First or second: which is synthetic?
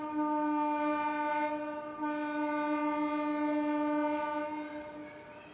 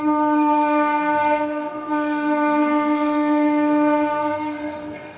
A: second